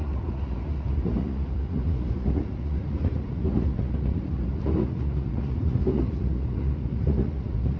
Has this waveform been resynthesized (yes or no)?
yes